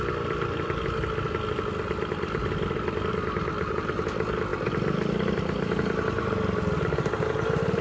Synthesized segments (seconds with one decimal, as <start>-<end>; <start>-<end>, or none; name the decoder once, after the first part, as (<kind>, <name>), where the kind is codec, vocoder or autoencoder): none